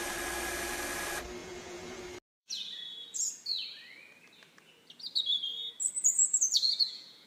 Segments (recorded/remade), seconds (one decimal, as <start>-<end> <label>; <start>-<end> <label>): 0.0-1.4 recorded; 1.4-2.0 remade; 2.0-2.4 recorded; 2.4-3.3 remade; 3.3-6.2 recorded; 6.2-7.3 remade